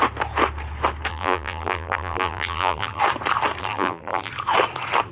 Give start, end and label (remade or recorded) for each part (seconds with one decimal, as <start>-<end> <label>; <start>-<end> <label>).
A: 0.0-1.1 recorded; 1.1-3.0 remade; 3.0-3.6 recorded; 3.6-4.3 remade; 4.3-5.1 recorded